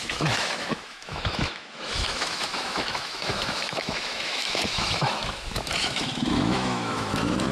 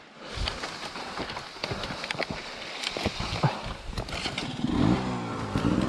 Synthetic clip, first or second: first